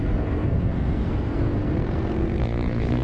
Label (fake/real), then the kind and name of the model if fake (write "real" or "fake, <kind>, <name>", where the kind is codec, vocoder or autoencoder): fake, codec, SNAC